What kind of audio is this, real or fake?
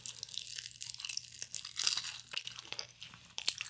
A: real